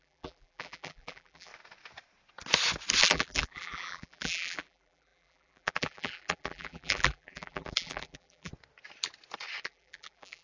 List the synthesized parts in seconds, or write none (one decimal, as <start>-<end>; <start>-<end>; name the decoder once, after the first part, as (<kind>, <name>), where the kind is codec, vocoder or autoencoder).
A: 0.0-1.5 (vocoder, BigVGAN v2); 3.0-8.5; 9.6-10.4